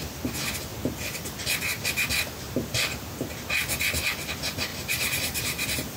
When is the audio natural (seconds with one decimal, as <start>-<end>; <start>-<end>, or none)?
0.0-4.7